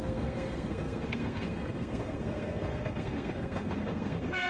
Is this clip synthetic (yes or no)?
yes